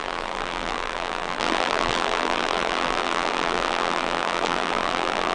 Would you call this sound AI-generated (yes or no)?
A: yes